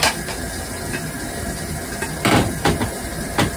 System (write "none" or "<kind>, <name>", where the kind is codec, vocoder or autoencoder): none